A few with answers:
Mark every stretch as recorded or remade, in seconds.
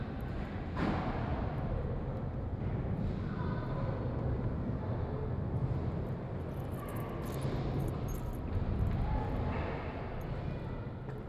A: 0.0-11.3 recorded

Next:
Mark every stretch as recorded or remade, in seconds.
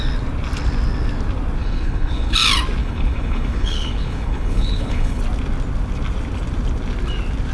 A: 0.0-1.6 recorded; 1.6-2.3 remade; 2.3-2.8 recorded; 2.8-5.2 remade; 5.2-7.5 recorded